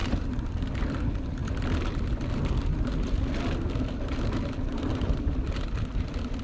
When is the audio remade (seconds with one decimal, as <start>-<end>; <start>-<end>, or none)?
0.0-0.7